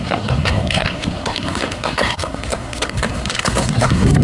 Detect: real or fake fake